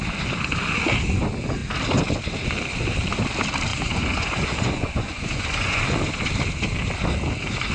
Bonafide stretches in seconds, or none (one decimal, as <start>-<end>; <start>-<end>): 0.0-3.7; 5.8-7.7